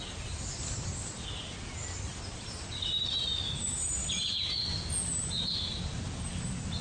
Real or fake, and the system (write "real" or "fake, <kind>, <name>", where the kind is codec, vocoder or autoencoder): real